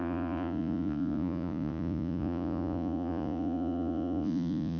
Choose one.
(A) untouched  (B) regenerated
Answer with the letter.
B